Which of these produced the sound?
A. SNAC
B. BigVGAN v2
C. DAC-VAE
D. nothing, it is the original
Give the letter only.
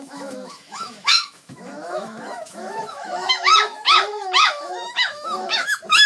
C